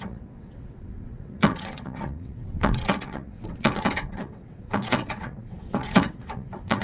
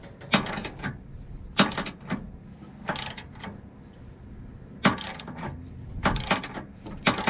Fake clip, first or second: first